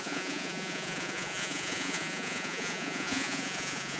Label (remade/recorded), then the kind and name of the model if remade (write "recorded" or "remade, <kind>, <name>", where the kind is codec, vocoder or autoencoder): remade, vocoder, Vocos